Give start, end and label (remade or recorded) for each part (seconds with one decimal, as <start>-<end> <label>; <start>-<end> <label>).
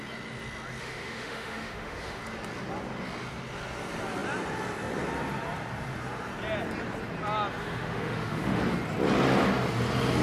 0.0-0.8 recorded; 0.8-2.2 remade; 2.2-7.6 recorded; 7.6-8.6 remade; 8.6-10.2 recorded